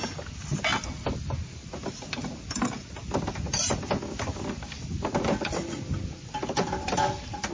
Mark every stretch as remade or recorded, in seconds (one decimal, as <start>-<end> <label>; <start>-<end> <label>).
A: 0.0-7.5 recorded